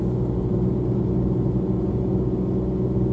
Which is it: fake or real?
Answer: real